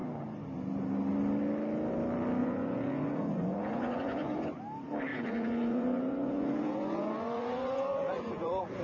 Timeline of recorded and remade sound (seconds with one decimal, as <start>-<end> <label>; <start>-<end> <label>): 0.0-2.4 recorded; 2.4-4.6 remade; 4.6-5.1 recorded; 5.1-8.8 remade